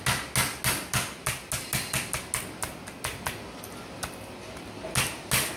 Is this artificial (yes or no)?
no